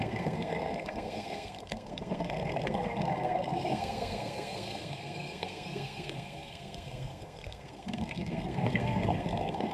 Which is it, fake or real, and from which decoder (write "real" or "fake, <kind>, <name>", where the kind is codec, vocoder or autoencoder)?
fake, codec, SNAC